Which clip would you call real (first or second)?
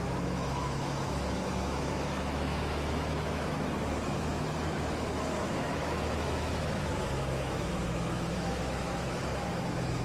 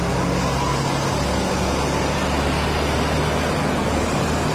second